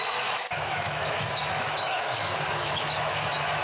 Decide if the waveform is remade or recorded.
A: remade